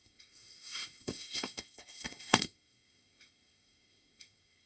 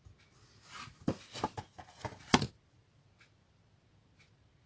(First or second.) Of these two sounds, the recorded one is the second